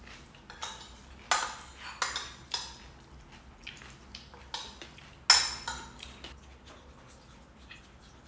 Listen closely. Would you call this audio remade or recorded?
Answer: recorded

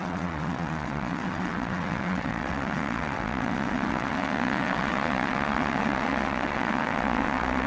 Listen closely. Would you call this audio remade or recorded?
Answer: remade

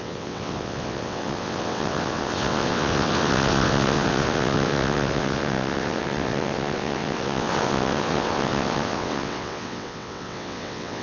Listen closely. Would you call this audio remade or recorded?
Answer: remade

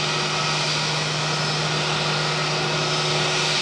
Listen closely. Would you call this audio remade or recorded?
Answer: recorded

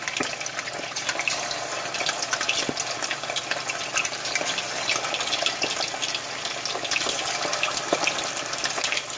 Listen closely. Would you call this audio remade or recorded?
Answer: recorded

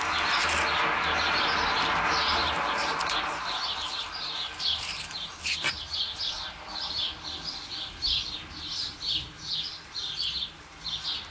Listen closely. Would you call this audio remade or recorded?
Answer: recorded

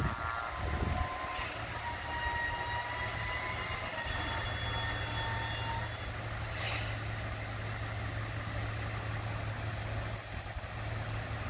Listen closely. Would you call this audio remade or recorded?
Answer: recorded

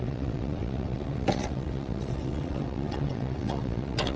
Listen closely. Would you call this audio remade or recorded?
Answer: remade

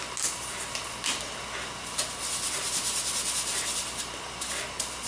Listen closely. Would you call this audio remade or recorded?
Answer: recorded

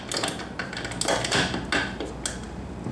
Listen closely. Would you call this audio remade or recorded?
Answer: recorded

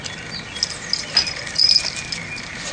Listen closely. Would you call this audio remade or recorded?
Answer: recorded